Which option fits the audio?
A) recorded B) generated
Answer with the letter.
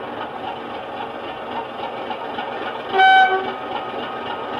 A